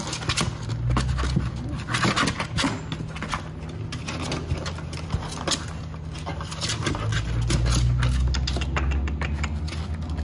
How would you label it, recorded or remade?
recorded